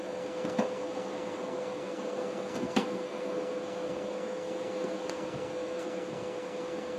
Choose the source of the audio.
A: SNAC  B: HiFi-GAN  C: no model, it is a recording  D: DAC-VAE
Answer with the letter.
A